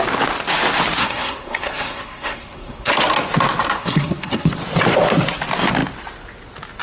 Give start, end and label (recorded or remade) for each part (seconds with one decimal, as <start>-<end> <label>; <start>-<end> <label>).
0.0-1.0 recorded; 1.0-2.9 remade; 2.9-3.8 recorded; 3.8-4.5 remade; 4.5-6.8 recorded